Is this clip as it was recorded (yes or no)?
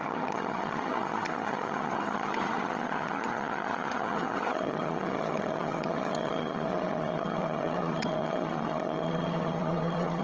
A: no